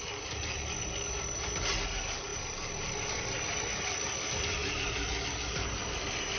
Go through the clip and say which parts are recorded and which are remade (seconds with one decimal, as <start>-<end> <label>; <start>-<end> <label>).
0.0-6.4 recorded